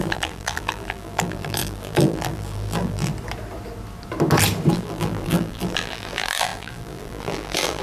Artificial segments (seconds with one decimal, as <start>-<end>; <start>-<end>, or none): 0.0-3.1; 4.7-7.8